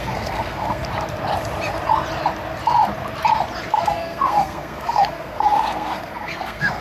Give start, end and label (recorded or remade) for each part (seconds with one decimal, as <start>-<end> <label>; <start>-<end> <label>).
0.0-0.8 remade; 0.8-3.7 recorded; 3.7-6.8 remade